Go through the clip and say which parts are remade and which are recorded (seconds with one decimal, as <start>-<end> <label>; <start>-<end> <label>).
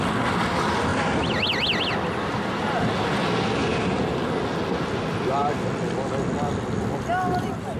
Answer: 0.0-7.8 recorded